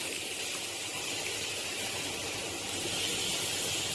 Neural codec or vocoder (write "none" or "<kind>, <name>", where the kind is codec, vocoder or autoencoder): vocoder, BigVGAN v2